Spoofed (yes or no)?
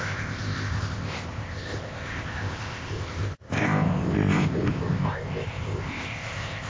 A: yes